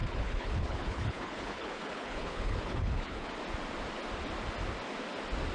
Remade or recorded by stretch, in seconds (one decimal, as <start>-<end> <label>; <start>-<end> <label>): 0.0-3.3 remade; 3.3-5.5 recorded